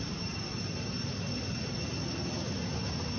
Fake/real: real